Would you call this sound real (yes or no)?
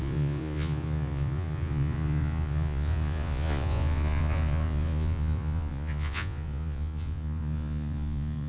no